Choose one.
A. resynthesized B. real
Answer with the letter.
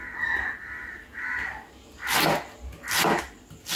B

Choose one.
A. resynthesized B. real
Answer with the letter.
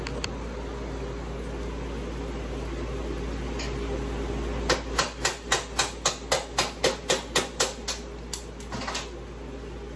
B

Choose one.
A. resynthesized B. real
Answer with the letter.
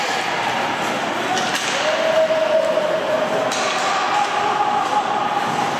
B